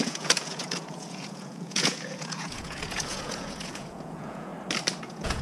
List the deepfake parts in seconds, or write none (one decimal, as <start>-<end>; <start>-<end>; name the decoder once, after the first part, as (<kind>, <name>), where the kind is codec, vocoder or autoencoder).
0.0-4.5 (vocoder, Vocos); 5.0-5.4